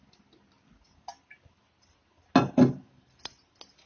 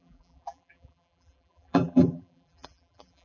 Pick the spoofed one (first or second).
second